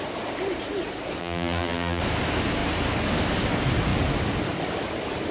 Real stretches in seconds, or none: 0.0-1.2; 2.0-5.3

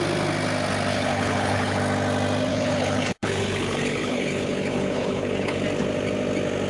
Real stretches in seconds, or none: 0.0-0.9; 1.8-2.5; 5.6-6.7

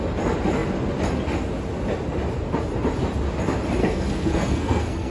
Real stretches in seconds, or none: 0.0-3.8

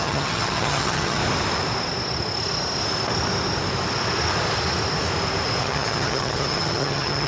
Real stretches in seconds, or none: 1.2-5.6

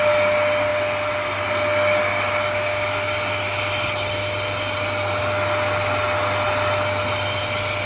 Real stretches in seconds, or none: 0.0-7.9

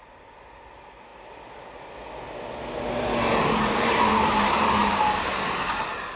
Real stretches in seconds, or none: 0.0-6.2